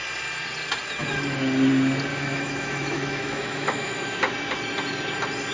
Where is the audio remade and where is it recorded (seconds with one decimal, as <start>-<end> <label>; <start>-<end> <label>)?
0.0-2.1 recorded; 2.1-4.2 remade; 4.2-5.5 recorded